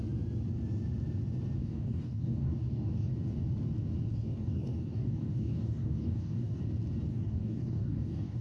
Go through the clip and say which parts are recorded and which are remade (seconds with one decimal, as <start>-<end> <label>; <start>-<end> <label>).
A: 0.0-1.6 recorded; 1.6-3.1 remade; 3.1-4.1 recorded; 4.1-6.6 remade; 6.6-7.1 recorded; 7.1-8.4 remade